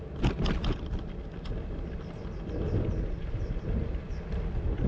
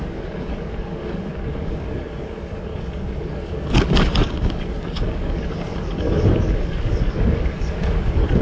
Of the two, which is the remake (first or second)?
second